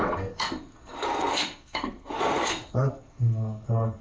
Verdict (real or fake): fake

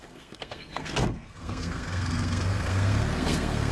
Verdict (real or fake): fake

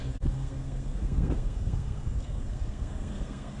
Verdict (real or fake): fake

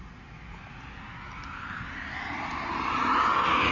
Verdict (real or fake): real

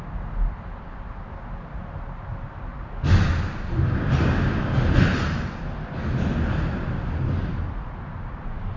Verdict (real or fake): real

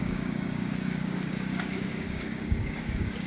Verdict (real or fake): fake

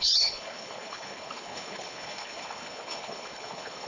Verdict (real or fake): fake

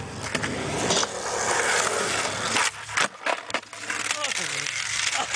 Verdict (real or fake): real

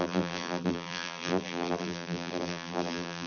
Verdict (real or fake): fake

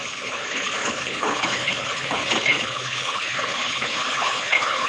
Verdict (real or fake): fake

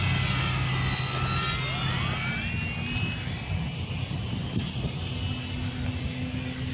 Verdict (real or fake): real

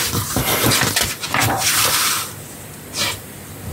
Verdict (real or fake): real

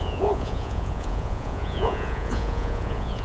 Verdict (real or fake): fake